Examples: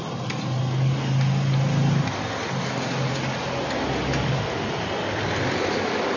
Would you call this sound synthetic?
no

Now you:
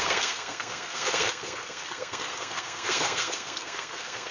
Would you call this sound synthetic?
yes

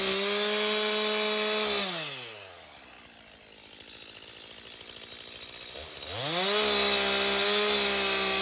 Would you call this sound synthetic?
no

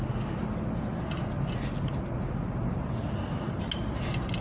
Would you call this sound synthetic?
no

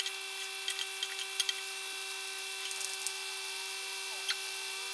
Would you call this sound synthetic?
no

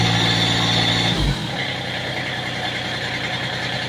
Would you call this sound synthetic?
no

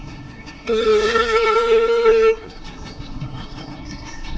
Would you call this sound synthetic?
yes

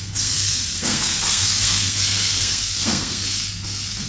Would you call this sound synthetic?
yes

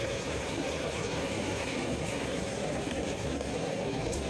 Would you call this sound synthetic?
yes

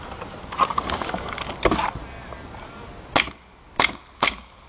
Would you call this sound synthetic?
no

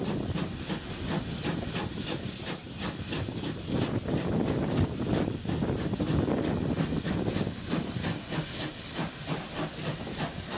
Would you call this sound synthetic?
no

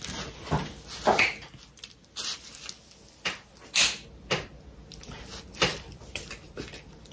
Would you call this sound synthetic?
no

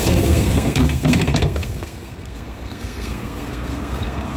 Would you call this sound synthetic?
yes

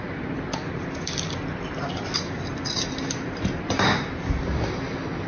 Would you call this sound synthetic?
no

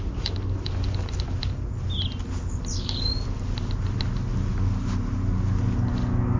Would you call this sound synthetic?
no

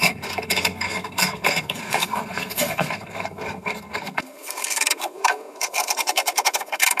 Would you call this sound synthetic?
yes